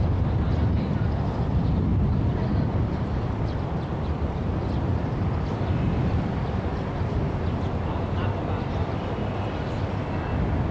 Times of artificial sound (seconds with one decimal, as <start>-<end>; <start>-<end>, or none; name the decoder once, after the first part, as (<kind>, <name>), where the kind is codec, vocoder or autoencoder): 0.0-9.2 (vocoder, BigVGAN v2)